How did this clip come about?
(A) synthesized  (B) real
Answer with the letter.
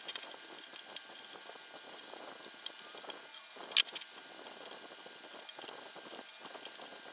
B